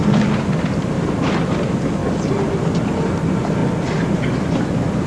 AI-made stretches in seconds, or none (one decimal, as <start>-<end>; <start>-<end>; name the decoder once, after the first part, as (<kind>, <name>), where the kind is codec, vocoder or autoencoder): 0.0-1.6 (vocoder, BigVGAN v2)